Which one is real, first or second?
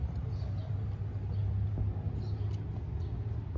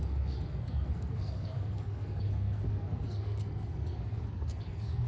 first